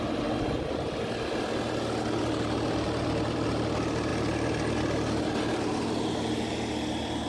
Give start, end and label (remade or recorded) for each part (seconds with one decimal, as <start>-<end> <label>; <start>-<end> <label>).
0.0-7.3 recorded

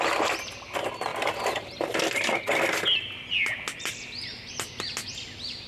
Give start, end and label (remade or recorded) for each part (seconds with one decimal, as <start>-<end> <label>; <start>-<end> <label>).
0.0-5.7 recorded

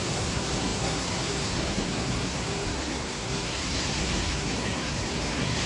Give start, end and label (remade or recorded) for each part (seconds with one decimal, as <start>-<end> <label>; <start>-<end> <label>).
0.0-5.7 remade